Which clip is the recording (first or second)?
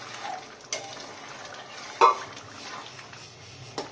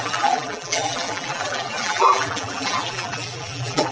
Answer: first